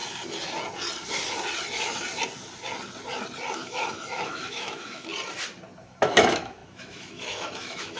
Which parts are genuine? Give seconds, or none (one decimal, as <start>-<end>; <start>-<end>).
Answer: 0.0-3.5; 5.1-5.8